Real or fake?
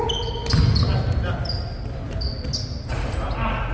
real